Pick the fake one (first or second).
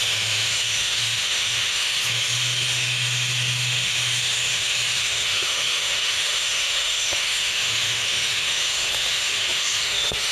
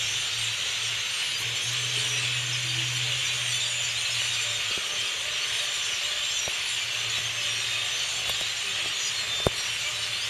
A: first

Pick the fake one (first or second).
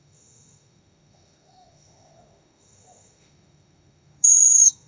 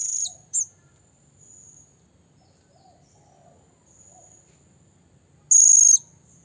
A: first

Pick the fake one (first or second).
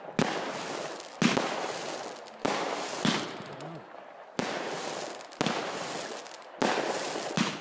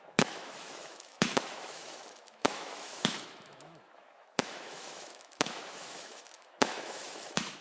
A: second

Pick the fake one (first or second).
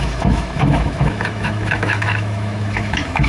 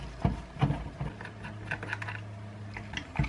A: first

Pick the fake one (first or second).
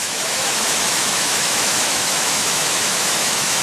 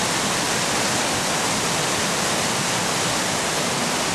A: first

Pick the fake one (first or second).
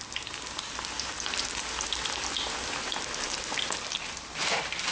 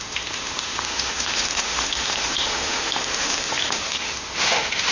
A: second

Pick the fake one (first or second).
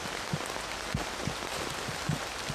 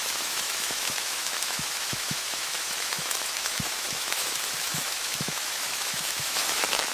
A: second